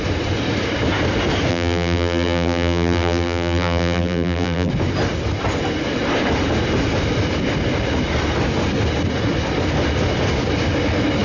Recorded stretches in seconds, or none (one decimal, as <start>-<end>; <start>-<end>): 0.0-1.5; 4.7-11.2